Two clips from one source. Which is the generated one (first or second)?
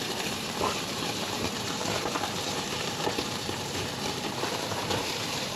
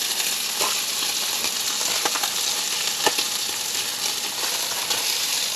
first